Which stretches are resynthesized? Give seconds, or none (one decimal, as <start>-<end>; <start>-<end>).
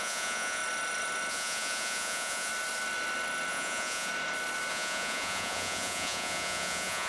0.0-0.6; 1.3-2.5; 3.5-4.1; 4.7-7.1